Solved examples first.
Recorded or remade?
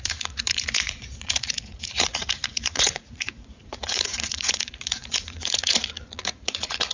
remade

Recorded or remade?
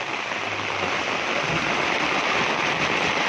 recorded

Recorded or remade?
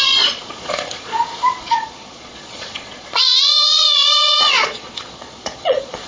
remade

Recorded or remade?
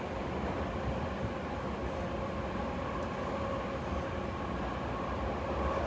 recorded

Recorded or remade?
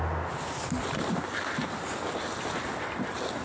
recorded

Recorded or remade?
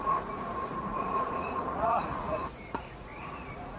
remade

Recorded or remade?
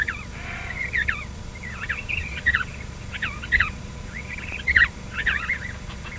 remade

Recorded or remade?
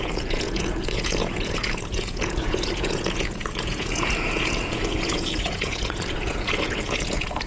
remade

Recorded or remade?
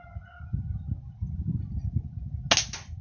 recorded